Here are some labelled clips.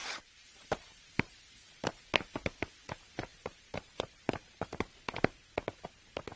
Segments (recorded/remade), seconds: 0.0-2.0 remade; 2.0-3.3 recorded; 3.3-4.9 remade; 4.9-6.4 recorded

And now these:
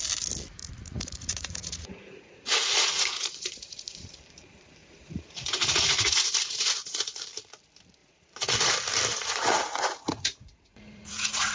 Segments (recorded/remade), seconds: 0.0-0.6 recorded; 0.6-4.1 remade; 4.1-4.8 recorded; 4.8-7.0 remade; 7.0-8.0 recorded; 8.0-8.7 remade; 8.7-9.1 recorded; 9.1-11.5 remade

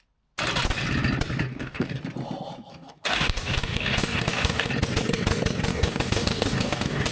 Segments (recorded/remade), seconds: 0.0-1.5 recorded; 1.5-2.0 remade; 2.0-2.7 recorded; 2.7-4.7 remade; 4.7-5.7 recorded; 5.7-7.1 remade

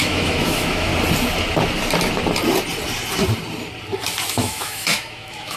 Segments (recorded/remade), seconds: 0.0-0.9 remade; 0.9-4.3 recorded; 4.3-5.6 remade

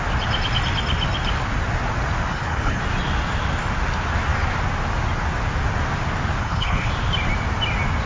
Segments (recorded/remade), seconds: 0.0-2.3 recorded; 2.3-2.8 remade; 2.8-6.4 recorded; 6.4-6.9 remade; 6.9-8.1 recorded